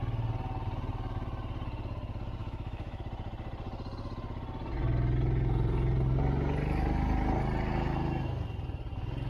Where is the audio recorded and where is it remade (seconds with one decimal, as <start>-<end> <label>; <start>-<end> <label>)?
0.0-2.4 recorded; 2.4-3.0 remade; 3.0-9.3 recorded